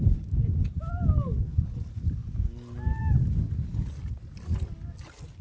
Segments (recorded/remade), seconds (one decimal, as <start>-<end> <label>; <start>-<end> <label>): 0.0-5.4 recorded